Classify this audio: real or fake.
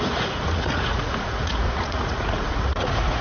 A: fake